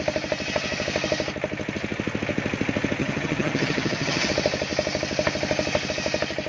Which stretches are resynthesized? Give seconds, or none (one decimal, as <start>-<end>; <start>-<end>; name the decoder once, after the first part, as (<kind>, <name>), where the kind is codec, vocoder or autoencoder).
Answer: 3.0-4.3 (vocoder, HiFi-GAN)